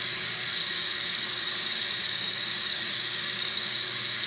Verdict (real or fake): fake